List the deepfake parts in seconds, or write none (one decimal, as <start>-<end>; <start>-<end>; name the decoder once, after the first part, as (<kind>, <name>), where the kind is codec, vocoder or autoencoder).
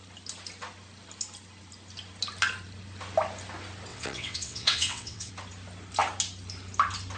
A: 3.9-5.3 (vocoder, WaveNeXt)